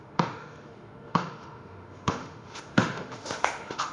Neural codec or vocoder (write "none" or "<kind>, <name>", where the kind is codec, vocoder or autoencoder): autoencoder, DAC-VAE